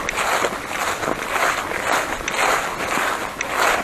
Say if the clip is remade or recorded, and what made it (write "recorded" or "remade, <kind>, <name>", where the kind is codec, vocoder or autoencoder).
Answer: recorded